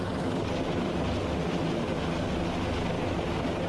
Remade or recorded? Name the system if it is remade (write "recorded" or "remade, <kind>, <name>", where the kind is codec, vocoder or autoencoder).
recorded